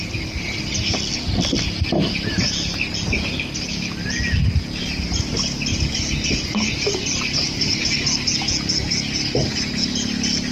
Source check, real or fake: real